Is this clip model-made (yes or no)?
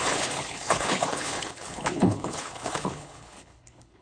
yes